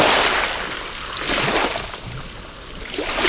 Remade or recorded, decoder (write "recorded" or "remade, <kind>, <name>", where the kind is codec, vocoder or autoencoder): recorded